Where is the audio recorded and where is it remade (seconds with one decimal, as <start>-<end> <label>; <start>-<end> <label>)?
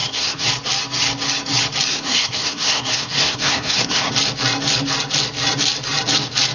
0.0-0.5 remade; 0.5-1.9 recorded; 1.9-4.1 remade; 4.1-6.5 recorded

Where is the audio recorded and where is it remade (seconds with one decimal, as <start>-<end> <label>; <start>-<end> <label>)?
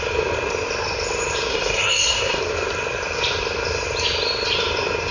0.0-1.5 recorded; 1.5-2.4 remade; 2.4-5.1 recorded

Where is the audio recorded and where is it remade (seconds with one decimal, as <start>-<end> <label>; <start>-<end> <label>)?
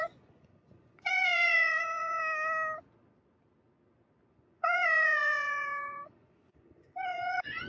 0.0-2.2 remade; 2.2-4.3 recorded; 4.3-7.7 remade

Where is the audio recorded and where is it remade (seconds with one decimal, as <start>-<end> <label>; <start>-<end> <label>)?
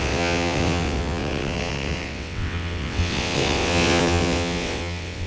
0.0-5.3 remade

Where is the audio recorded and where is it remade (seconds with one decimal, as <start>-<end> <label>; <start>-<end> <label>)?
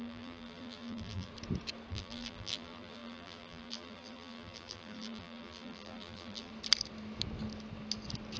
0.0-1.3 remade; 1.3-1.9 recorded; 1.9-6.5 remade; 6.5-8.4 recorded